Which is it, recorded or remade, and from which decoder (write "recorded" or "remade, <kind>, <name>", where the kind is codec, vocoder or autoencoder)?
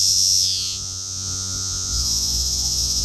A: remade, vocoder, Vocos